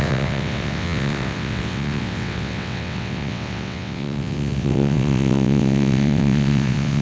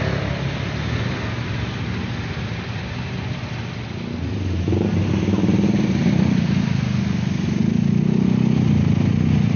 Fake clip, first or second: first